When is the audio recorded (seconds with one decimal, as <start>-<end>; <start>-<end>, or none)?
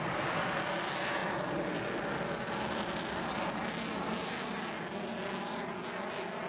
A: 0.0-6.5